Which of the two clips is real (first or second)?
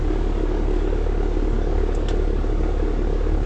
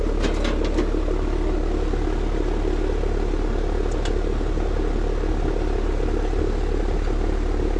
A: second